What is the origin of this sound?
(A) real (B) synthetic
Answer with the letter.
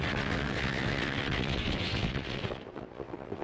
B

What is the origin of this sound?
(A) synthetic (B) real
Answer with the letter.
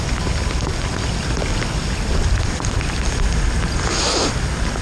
B